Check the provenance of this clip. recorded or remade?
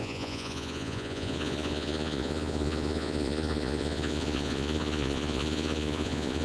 remade